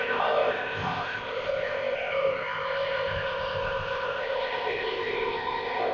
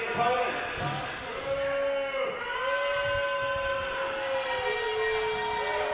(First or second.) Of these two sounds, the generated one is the first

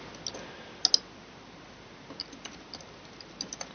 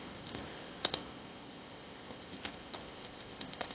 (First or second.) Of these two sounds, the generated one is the second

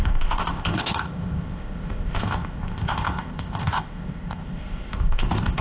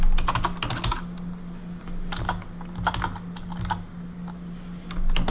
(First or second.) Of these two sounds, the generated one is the first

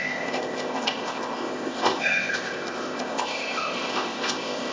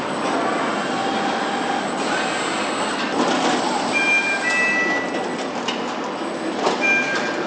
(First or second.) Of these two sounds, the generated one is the first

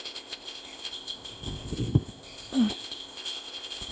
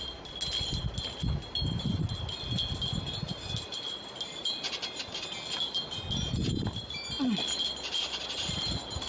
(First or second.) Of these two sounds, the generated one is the first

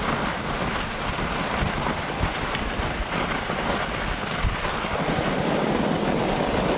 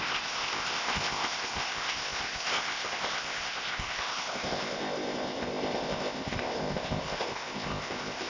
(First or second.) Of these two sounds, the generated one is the second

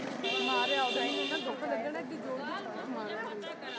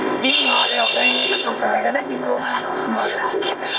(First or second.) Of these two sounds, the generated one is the second